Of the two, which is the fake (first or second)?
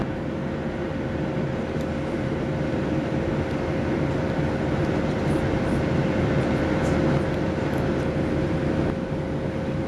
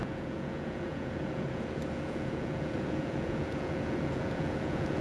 second